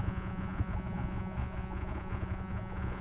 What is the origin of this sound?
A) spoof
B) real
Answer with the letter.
A